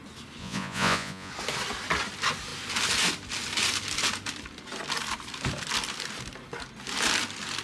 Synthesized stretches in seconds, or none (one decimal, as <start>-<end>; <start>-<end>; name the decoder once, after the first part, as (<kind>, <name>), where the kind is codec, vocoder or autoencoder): 0.4-1.3 (vocoder, Vocos)